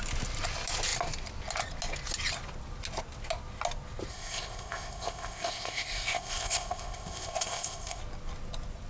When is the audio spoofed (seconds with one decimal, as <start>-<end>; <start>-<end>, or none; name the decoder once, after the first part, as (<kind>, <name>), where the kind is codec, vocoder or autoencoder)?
4.1-8.0 (codec, ZipCodec)